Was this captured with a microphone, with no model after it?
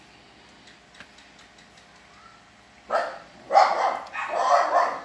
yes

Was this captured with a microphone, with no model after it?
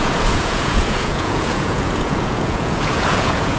no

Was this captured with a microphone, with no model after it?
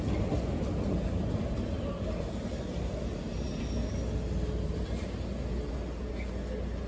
yes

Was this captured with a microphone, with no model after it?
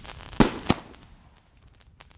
yes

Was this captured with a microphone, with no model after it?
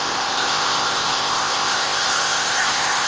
no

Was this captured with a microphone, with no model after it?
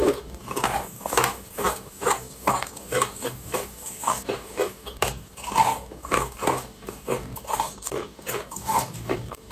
no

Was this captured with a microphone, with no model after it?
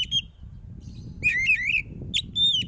yes